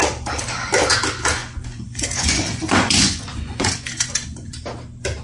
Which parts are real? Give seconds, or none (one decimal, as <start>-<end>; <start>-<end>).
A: 0.0-1.4; 4.5-5.2